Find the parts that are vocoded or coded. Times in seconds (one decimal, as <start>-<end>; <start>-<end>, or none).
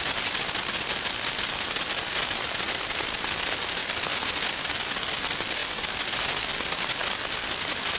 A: none